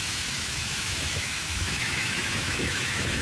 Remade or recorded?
remade